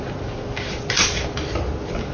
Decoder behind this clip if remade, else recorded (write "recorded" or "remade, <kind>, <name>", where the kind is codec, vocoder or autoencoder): recorded